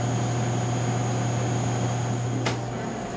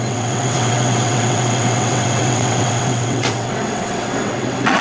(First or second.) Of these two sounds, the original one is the first